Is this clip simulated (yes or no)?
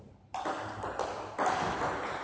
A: no